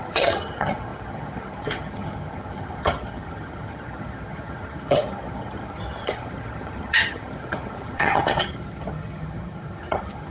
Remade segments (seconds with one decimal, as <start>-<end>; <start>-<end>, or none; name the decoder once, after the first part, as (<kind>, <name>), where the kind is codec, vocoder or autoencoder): 0.0-10.3 (vocoder, HiFi-GAN)